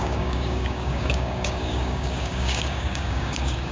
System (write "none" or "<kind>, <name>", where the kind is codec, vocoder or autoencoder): codec, DAC